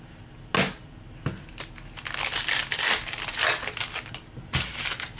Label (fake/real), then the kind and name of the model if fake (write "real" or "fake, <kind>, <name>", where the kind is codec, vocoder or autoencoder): real